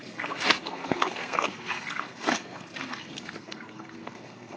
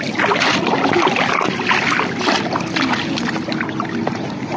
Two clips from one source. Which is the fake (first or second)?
first